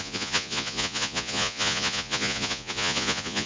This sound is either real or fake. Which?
fake